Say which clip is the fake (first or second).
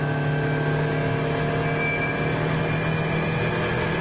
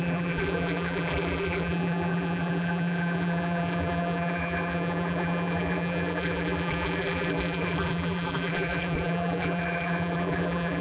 second